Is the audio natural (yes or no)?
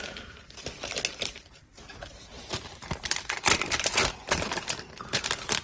no